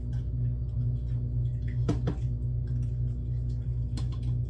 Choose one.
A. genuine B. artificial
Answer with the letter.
A